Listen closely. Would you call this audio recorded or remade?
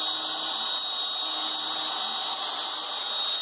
recorded